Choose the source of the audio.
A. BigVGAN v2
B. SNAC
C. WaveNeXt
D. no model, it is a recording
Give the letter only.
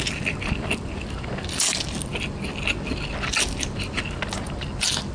D